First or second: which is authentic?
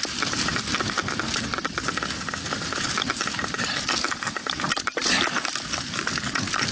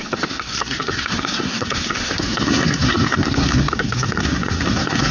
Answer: first